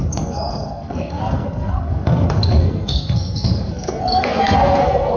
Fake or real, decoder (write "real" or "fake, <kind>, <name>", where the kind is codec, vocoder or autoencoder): fake, codec, SNAC